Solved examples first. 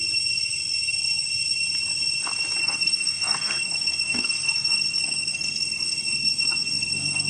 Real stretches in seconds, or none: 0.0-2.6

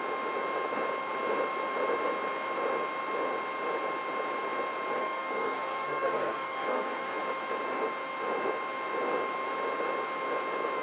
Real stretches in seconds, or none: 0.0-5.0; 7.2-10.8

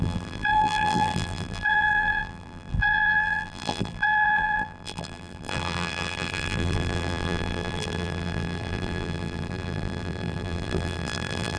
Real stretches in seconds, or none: none

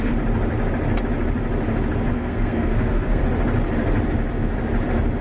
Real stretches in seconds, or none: 0.0-2.1; 3.2-5.2